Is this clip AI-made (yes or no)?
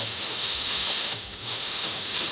yes